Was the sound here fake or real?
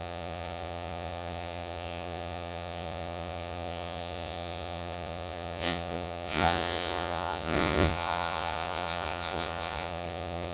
fake